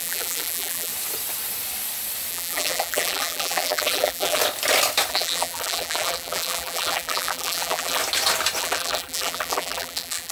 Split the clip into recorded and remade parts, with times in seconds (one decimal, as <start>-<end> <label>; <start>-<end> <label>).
0.0-0.9 remade; 0.9-2.3 recorded; 2.3-4.4 remade; 4.4-5.1 recorded; 5.1-8.0 remade; 8.0-8.6 recorded; 8.6-10.3 remade